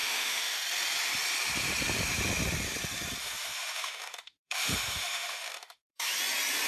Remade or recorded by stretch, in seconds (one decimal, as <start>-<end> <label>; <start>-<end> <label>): 0.0-0.6 remade; 0.6-3.2 recorded; 3.2-6.1 remade; 6.1-6.7 recorded